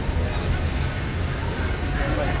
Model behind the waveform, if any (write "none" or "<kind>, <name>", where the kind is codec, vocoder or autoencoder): none